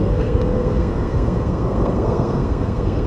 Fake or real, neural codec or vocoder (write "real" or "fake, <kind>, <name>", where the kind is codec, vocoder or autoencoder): fake, codec, SNAC